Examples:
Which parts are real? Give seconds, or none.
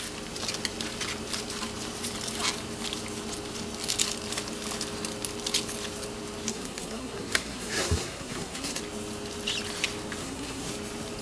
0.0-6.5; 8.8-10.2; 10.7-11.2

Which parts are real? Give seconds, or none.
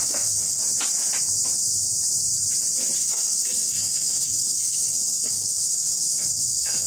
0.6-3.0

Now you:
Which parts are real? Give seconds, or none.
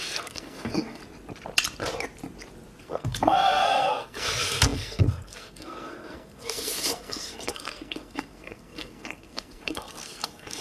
1.0-2.8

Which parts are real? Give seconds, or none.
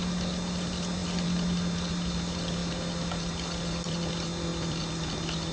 0.0-5.5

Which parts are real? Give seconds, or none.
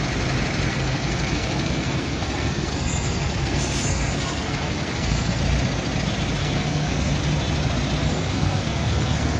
0.0-0.7; 5.4-6.4; 7.1-8.1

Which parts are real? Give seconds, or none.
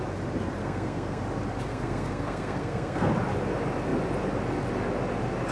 0.0-0.6; 1.2-1.7; 3.1-5.5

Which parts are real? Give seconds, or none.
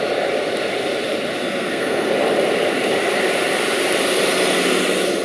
0.0-1.4; 2.1-5.2